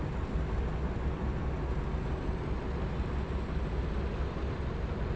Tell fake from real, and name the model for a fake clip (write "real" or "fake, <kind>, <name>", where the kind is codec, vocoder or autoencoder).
real